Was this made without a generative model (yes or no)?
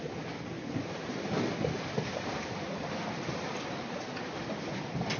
yes